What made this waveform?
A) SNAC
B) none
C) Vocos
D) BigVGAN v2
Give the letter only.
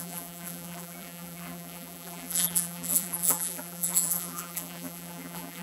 D